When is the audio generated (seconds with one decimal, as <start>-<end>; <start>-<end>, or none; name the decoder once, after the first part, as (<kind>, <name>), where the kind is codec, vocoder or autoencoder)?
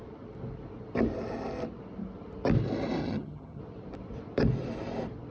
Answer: 3.0-3.6 (vocoder, HiFi-GAN)